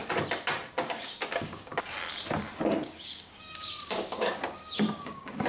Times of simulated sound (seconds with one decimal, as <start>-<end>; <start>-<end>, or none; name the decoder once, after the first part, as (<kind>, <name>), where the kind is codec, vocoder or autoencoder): 0.8-1.7 (codec, DAC); 2.7-5.5